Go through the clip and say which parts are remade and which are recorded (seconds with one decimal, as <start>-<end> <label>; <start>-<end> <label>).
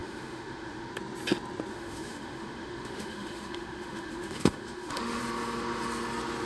0.0-0.9 remade; 0.9-1.7 recorded; 1.7-5.2 remade; 5.2-6.5 recorded